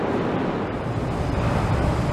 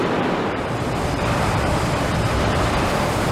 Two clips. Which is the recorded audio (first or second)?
first